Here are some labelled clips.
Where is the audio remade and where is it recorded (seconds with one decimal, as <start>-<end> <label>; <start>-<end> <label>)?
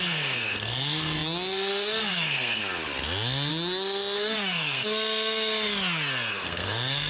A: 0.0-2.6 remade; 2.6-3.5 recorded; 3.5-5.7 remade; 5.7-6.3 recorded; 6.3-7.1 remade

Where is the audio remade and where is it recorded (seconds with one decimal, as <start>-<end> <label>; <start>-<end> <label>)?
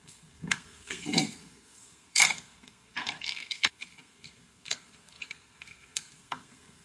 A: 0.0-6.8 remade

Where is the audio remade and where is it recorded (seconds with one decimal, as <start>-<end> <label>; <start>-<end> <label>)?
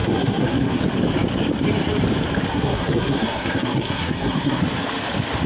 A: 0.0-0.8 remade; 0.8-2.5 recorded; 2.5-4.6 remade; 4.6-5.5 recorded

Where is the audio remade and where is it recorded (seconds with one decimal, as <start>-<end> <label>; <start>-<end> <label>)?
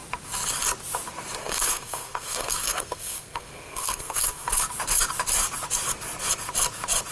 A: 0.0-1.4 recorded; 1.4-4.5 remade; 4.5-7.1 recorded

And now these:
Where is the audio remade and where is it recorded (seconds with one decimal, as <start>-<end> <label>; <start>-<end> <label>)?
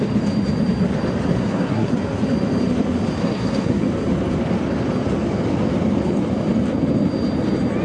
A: 0.0-1.3 recorded; 1.3-1.9 remade; 1.9-3.2 recorded; 3.2-3.8 remade; 3.8-7.8 recorded